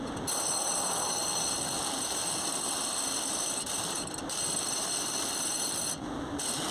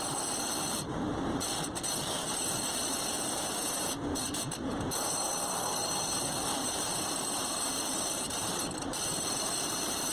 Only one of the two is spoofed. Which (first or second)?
second